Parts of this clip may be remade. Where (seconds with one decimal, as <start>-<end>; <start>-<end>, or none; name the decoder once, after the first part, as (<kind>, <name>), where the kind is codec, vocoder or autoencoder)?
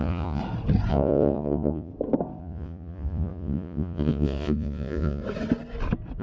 0.0-0.4 (vocoder, Vocos); 0.9-1.9; 2.4-5.2